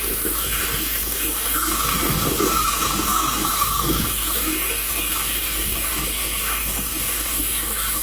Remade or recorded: remade